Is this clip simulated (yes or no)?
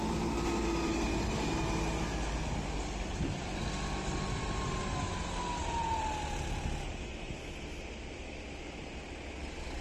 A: no